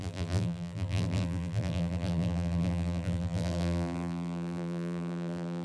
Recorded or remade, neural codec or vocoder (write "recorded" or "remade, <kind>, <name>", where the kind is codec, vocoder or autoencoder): remade, vocoder, BigVGAN v2